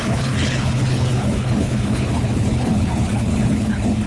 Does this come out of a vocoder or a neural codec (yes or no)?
yes